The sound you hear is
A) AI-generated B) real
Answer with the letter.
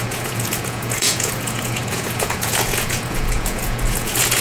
A